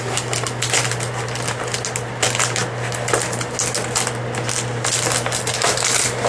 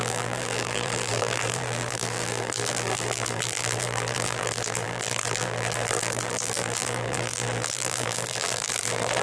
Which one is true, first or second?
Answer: first